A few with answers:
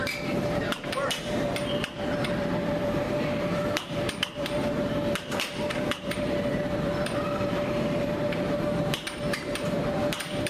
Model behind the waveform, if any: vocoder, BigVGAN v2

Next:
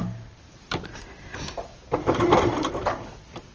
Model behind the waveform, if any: vocoder, BigVGAN v2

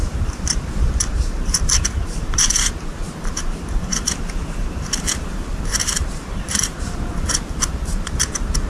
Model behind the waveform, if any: vocoder, BigVGAN v2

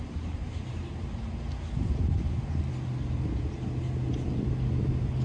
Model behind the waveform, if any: none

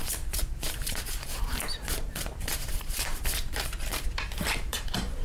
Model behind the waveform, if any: vocoder, BigVGAN v2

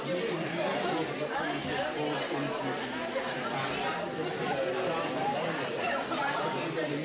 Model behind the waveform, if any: none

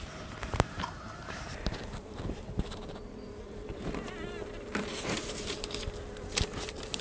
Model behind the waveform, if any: vocoder, BigVGAN v2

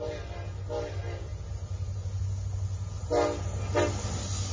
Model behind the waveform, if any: none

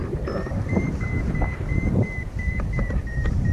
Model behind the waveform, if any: vocoder, BigVGAN v2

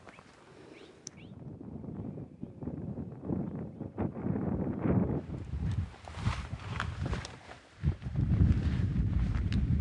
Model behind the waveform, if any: vocoder, BigVGAN v2